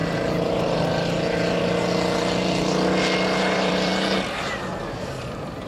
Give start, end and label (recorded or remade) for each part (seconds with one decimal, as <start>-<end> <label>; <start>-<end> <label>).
0.0-3.4 recorded; 3.4-3.9 remade; 3.9-5.1 recorded; 5.1-5.7 remade